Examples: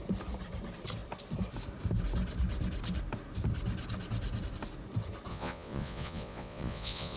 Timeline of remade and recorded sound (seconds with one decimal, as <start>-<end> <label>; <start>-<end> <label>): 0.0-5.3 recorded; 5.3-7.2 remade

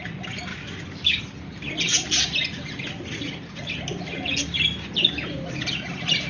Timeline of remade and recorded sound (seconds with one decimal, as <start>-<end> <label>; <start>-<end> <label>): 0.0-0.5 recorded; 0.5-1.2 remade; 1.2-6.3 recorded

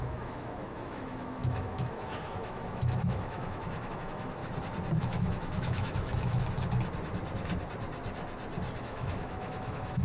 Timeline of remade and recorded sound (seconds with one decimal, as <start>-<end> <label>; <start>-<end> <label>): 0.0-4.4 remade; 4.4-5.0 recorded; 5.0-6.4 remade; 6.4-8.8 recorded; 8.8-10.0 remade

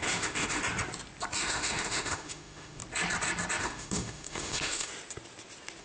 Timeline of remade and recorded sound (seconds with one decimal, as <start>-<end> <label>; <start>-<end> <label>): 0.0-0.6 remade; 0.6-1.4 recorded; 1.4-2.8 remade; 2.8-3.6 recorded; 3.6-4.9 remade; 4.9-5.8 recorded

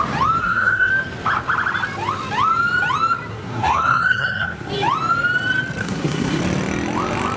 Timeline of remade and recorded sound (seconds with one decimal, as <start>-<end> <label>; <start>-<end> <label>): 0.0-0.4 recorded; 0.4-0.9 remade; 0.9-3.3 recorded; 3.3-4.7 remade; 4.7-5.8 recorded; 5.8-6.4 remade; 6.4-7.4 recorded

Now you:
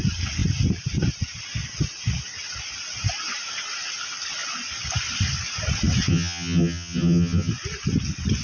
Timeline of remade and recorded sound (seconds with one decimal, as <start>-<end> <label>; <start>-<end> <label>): 0.0-6.1 recorded; 6.1-7.5 remade; 7.5-8.4 recorded